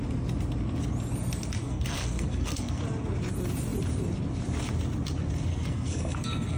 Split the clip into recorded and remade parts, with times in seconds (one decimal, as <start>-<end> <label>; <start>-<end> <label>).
0.0-1.6 recorded; 1.6-2.8 remade; 2.8-5.5 recorded; 5.5-6.6 remade